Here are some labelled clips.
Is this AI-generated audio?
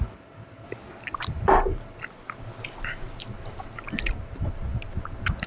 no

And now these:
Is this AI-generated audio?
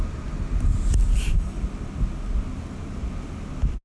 no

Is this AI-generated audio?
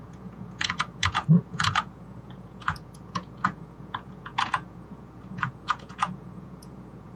yes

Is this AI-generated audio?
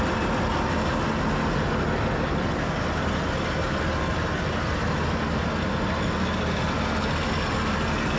no